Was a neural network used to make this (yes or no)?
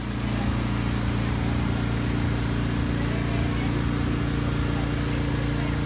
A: no